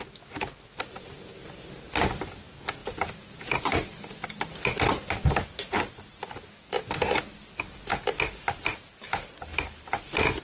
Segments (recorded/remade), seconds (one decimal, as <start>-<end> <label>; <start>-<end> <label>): 0.0-9.5 recorded; 9.5-10.4 remade

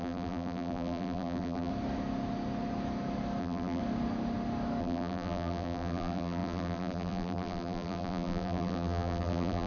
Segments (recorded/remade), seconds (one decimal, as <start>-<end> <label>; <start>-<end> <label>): 0.0-1.7 remade; 1.7-3.4 recorded; 3.4-3.8 remade; 3.8-4.8 recorded; 4.8-9.7 remade

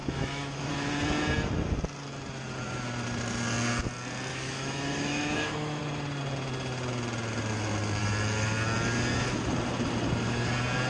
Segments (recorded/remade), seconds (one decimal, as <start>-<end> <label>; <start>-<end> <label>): 0.0-0.7 remade; 0.7-4.3 recorded; 4.3-5.8 remade; 5.8-10.9 recorded

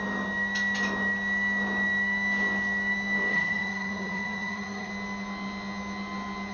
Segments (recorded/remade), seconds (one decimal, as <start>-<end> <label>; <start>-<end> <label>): 0.0-3.3 recorded; 3.3-4.9 remade; 4.9-6.5 recorded

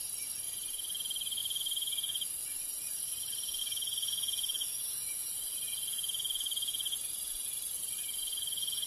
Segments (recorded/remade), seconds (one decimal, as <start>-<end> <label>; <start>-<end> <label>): 0.0-8.9 remade

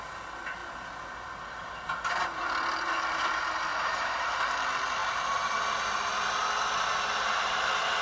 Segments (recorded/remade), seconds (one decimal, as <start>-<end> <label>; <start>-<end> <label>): 0.0-3.7 recorded; 3.7-4.2 remade; 4.2-8.0 recorded

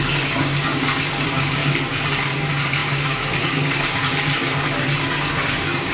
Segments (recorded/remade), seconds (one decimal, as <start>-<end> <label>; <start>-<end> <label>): 0.0-1.6 remade; 1.6-2.2 recorded; 2.2-4.0 remade; 4.0-5.0 recorded; 5.0-5.9 remade

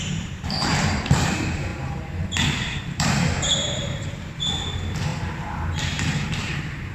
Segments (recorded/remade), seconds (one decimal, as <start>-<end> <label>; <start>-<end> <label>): 0.0-6.9 remade